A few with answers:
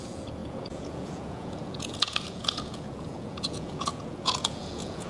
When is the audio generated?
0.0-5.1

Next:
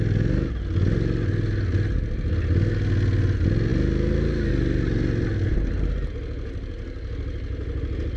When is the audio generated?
none

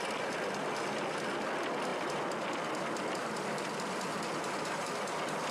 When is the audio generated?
none

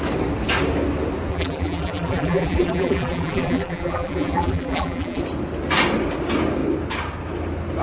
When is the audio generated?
1.3-5.2

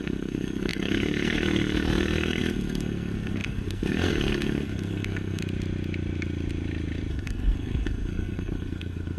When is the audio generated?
0.0-5.4; 7.1-9.2

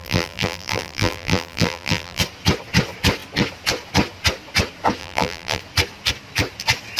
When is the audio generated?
0.0-2.2; 5.0-5.6

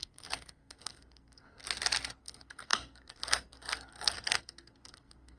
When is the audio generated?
0.0-1.6; 2.2-5.4